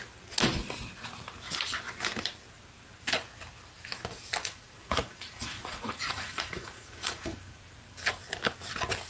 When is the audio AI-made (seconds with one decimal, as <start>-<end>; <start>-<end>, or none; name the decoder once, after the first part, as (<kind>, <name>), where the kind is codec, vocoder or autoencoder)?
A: 4.4-7.6 (vocoder, Vocos)